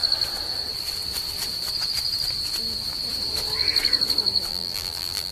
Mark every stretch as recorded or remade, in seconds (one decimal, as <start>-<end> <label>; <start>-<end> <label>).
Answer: 0.0-4.5 recorded; 4.5-5.3 remade